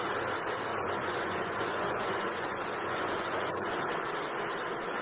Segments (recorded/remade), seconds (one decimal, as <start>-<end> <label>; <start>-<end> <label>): 0.0-0.7 recorded; 0.7-3.7 remade; 3.7-5.0 recorded